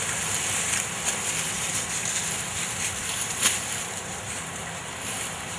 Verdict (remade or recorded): remade